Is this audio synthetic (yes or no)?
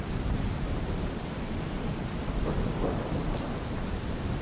yes